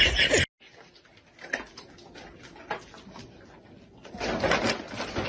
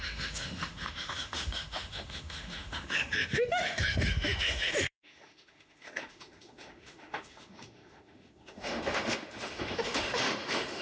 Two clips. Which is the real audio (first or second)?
first